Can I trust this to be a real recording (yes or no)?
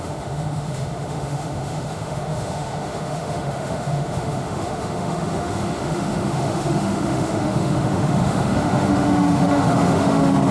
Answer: no